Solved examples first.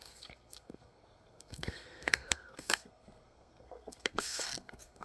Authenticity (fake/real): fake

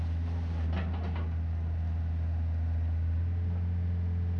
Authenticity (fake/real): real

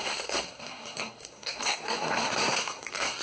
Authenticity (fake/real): fake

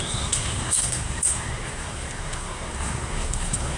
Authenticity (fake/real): fake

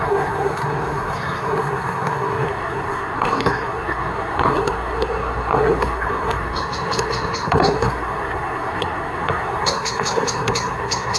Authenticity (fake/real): fake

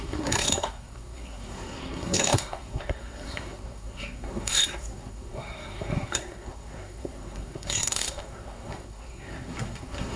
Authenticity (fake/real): fake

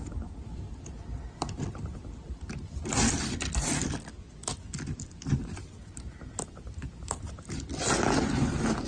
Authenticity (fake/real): real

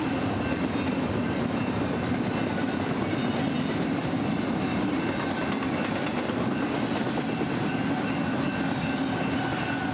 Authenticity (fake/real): real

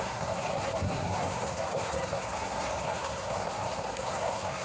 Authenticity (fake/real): fake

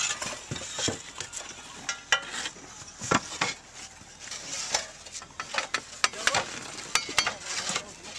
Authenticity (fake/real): real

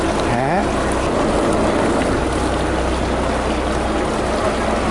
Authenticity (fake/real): real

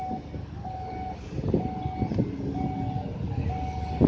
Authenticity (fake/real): real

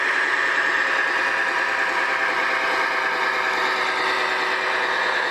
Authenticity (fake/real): real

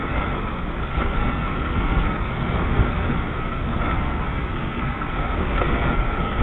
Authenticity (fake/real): fake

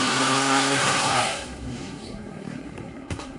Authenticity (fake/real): fake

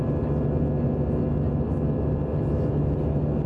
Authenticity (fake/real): real